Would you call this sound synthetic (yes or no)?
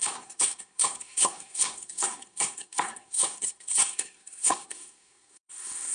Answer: yes